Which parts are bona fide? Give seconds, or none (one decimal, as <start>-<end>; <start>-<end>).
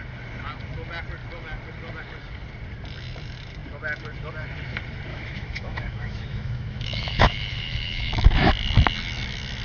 0.0-5.1; 8.5-9.6